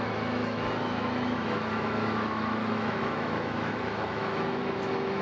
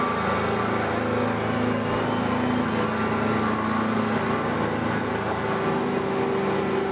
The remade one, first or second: first